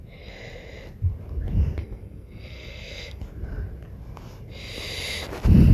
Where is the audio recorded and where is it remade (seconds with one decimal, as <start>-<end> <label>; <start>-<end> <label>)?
0.0-1.8 recorded; 1.8-3.2 remade; 3.2-5.7 recorded